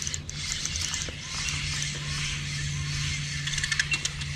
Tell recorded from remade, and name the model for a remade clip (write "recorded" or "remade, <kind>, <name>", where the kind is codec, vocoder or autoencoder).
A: recorded